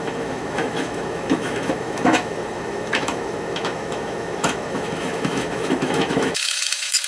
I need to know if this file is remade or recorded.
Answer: remade